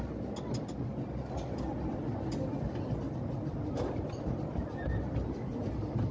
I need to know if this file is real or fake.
real